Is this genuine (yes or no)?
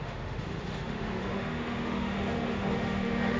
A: no